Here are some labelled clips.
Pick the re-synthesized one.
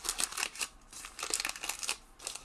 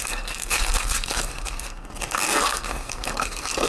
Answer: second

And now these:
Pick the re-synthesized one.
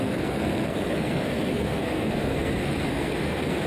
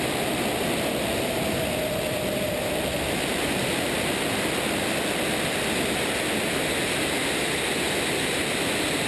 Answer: first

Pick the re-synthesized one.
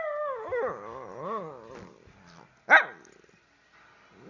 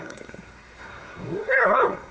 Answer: second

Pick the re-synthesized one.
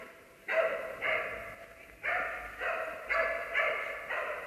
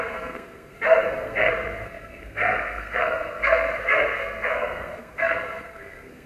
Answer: second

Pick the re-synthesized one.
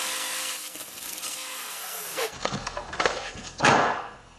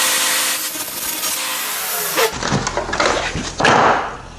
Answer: first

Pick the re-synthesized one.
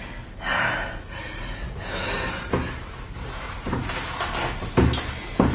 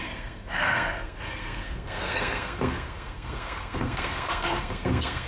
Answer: second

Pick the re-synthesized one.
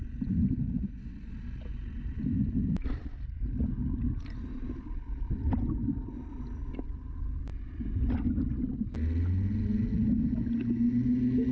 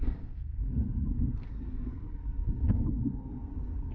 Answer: second